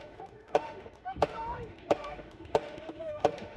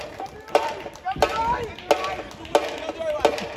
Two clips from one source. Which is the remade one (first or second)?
first